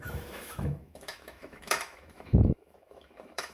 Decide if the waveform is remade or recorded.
remade